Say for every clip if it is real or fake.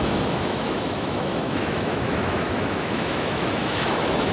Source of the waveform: fake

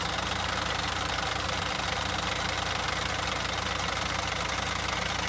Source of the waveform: real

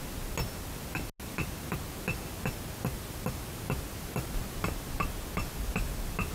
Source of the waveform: real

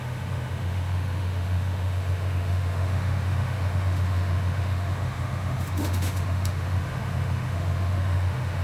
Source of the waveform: fake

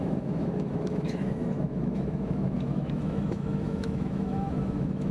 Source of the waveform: fake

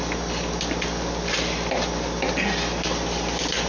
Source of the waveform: real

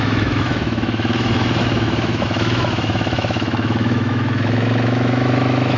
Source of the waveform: fake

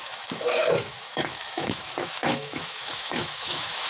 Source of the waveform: fake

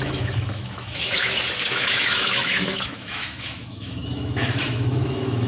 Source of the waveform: fake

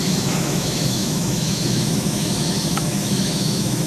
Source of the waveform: fake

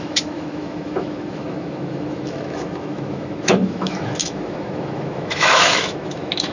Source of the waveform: fake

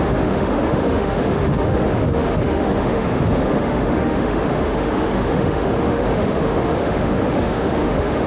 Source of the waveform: fake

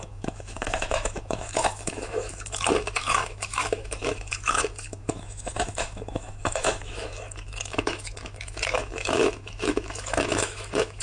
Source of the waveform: fake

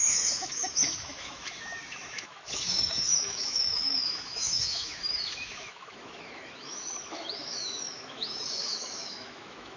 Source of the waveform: fake